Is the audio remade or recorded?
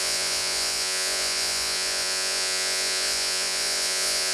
remade